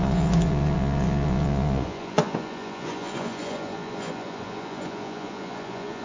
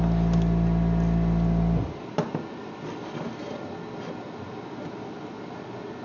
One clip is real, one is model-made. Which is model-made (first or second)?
first